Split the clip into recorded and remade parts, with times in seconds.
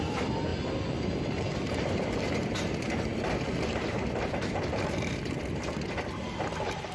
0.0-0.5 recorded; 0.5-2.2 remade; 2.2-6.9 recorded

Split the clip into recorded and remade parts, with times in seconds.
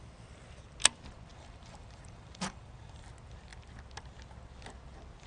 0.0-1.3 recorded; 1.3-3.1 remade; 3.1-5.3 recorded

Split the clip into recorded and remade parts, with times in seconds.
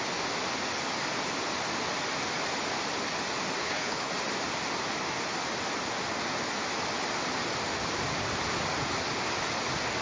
0.0-3.6 recorded; 3.6-4.1 remade; 4.1-10.0 recorded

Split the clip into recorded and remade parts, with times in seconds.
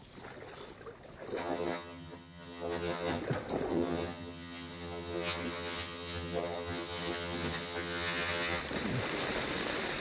0.0-1.4 recorded; 1.4-3.2 remade; 3.2-3.7 recorded; 3.7-8.6 remade; 8.6-10.0 recorded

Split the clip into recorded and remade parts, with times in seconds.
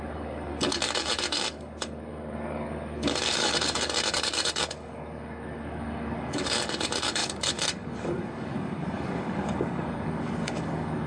0.0-11.1 remade